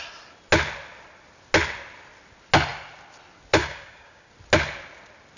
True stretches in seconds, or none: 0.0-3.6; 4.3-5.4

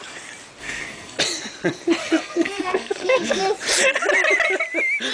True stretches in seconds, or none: 0.0-0.6; 1.2-2.0; 3.4-5.1

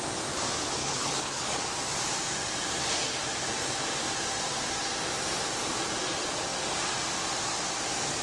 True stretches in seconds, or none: 0.0-0.8; 1.6-8.2